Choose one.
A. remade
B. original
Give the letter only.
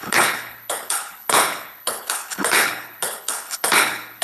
A